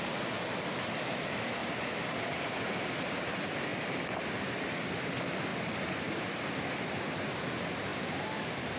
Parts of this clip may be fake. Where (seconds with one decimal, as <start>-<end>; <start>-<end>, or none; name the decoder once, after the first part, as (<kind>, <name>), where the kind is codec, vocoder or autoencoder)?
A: 0.0-1.6 (vocoder, BigVGAN v2); 3.1-8.8